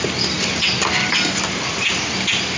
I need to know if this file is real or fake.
real